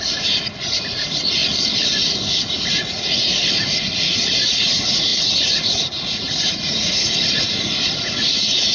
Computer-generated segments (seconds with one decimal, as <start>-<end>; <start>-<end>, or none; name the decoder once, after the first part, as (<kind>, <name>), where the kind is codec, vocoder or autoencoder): 0.0-1.4 (vocoder, Vocos); 2.3-3.3; 4.0-8.7